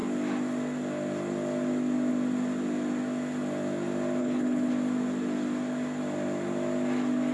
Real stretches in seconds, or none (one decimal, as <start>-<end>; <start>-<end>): 0.0-4.2; 4.7-7.3